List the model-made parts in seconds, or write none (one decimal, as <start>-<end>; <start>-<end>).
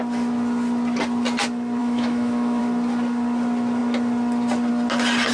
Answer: 1.8-2.6